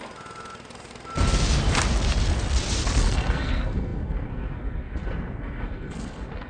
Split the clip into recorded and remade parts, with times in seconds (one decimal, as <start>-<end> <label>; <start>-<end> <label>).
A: 0.0-3.0 recorded; 3.0-6.5 remade